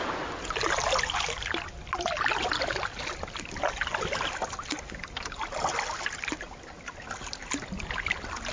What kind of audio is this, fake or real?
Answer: real